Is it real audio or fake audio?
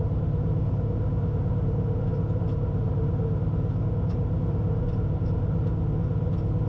real